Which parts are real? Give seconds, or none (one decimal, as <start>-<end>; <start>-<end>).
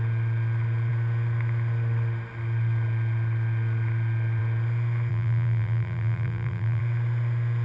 0.0-5.1; 6.8-7.6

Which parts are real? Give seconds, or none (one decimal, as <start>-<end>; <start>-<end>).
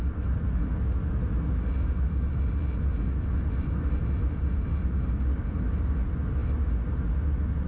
0.0-7.7